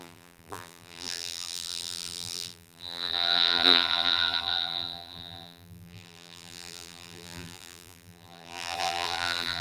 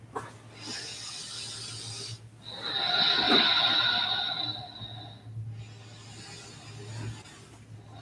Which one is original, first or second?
second